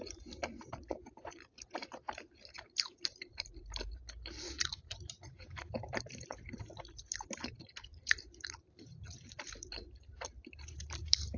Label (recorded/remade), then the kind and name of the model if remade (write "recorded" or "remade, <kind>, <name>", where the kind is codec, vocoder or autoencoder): remade, vocoder, BigVGAN v2